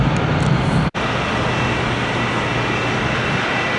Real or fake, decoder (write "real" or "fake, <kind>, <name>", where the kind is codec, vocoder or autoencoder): real